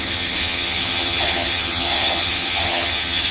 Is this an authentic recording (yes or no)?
no